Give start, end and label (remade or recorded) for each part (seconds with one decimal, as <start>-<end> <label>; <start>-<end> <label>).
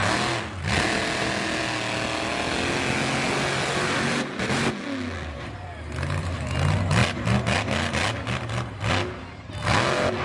0.0-10.2 recorded